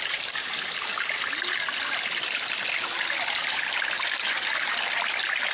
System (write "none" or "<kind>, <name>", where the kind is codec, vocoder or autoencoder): none